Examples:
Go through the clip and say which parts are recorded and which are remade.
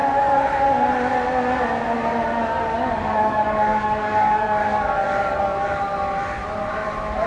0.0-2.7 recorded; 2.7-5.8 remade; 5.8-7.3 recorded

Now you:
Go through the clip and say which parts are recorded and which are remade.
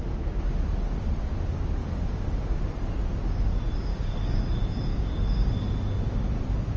0.0-1.8 recorded; 1.8-2.6 remade; 2.6-3.9 recorded; 3.9-4.4 remade; 4.4-4.9 recorded; 4.9-5.5 remade; 5.5-6.8 recorded